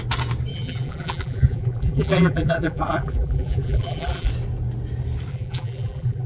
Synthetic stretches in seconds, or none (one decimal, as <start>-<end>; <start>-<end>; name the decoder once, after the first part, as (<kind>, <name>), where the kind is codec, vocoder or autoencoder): 0.5-4.3 (vocoder, BigVGAN v2); 5.3-6.3